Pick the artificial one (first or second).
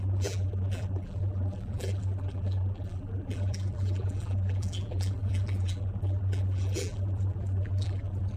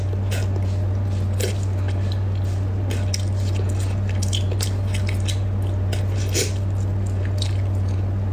first